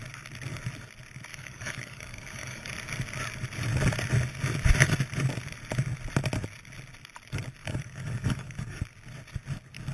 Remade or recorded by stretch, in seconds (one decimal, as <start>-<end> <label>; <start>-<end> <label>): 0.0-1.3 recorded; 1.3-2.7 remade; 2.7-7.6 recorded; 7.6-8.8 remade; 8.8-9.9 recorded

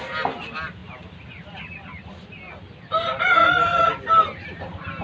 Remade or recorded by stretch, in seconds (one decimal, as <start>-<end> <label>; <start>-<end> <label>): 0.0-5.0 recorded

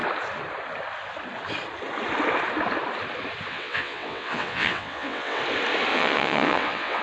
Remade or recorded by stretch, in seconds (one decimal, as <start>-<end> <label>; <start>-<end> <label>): 0.0-3.5 recorded; 3.5-5.4 remade; 5.4-5.9 recorded; 5.9-7.0 remade

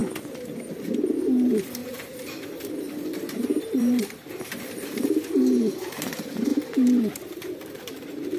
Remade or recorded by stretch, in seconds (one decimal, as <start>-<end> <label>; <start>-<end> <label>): 0.0-1.8 recorded; 1.8-4.0 remade; 4.0-6.5 recorded; 6.5-8.4 remade

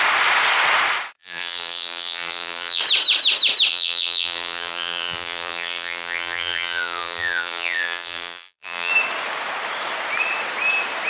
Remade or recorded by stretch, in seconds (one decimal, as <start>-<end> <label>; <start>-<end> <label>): 0.0-1.2 recorded; 1.2-2.8 remade; 2.8-3.7 recorded; 3.7-8.9 remade; 8.9-11.1 recorded

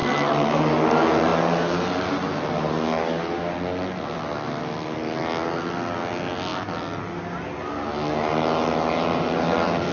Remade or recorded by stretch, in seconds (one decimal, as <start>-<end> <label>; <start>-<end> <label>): 0.0-9.9 recorded

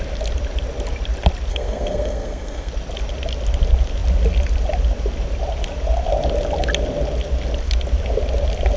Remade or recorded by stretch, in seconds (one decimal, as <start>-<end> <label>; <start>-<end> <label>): 0.0-1.5 recorded; 1.5-2.7 remade; 2.7-8.8 recorded

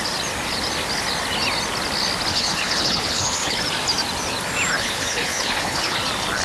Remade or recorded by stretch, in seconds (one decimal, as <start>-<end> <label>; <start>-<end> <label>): 0.0-2.3 recorded; 2.3-3.6 remade; 3.6-4.8 recorded; 4.8-6.0 remade; 6.0-6.4 recorded